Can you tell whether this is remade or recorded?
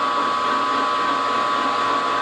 recorded